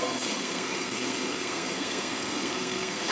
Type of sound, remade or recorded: remade